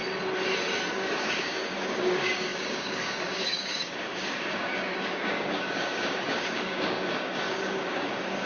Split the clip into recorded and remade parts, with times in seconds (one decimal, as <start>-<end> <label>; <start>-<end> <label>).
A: 0.0-0.9 recorded; 0.9-8.5 remade